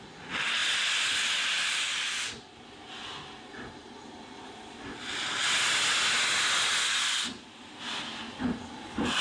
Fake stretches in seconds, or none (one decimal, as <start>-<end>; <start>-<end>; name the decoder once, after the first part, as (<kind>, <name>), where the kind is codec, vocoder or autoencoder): none